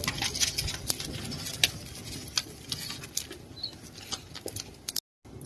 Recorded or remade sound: recorded